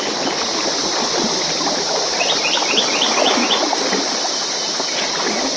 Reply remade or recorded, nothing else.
recorded